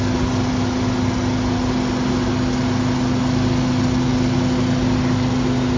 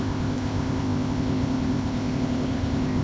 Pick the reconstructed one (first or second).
second